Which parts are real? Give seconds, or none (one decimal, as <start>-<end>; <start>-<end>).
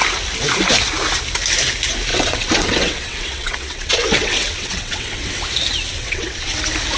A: 0.0-2.1; 5.4-5.9; 6.6-7.0